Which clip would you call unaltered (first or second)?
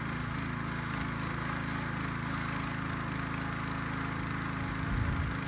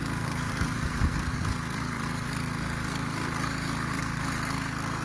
first